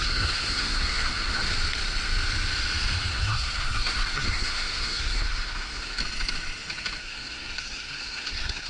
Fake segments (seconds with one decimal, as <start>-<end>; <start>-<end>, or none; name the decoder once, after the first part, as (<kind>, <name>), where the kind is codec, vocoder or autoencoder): 0.0-1.3 (codec, SNAC); 3.1-6.0; 7.0-8.7